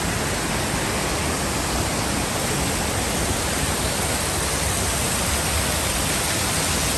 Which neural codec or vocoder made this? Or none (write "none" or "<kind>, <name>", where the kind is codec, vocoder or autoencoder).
none